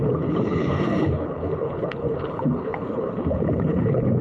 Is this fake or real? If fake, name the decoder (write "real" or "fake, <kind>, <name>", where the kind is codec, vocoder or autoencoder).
fake, codec, HILCodec